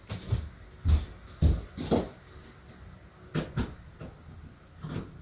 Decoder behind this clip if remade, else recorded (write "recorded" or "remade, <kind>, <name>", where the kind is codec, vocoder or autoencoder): recorded